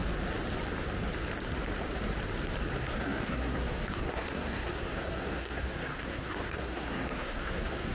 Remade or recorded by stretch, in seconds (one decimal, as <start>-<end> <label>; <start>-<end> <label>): 0.0-2.7 recorded; 2.7-7.9 remade